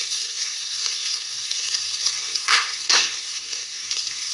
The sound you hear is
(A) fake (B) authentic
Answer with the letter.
A